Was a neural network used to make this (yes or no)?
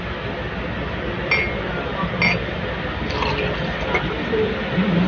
no